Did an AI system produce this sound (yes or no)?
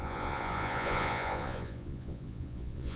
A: yes